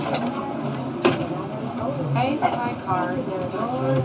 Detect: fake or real real